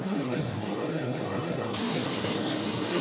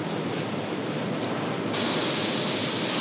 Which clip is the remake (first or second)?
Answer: first